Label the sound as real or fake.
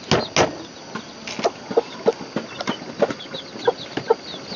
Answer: real